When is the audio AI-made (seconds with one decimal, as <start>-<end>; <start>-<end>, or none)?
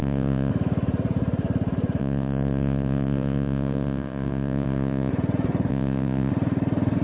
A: 0.0-0.5; 2.0-5.1; 5.7-6.3